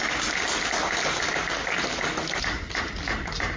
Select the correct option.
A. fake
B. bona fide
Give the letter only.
B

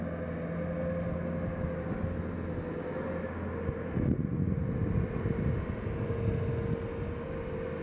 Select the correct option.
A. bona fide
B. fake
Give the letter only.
A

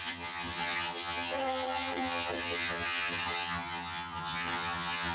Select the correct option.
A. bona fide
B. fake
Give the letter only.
B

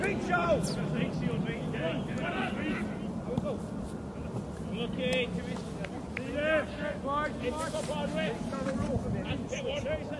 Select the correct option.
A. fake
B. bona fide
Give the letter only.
B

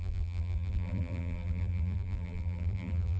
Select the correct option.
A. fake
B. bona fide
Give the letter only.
A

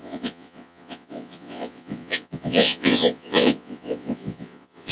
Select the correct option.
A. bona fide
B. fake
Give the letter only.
B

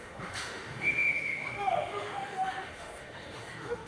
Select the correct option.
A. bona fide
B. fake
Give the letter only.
B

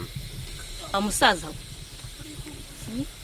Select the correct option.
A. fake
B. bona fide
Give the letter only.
B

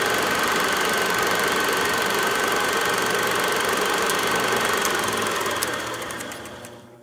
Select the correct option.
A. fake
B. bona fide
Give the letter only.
A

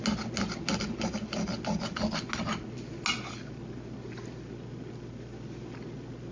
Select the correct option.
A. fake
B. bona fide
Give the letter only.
B